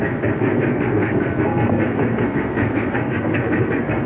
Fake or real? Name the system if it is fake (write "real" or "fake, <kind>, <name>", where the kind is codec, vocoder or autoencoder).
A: fake, codec, SNAC